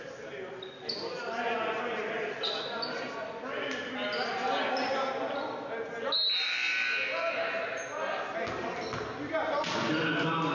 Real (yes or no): yes